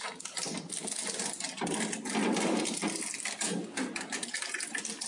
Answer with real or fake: real